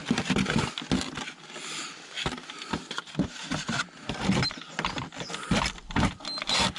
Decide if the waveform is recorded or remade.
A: recorded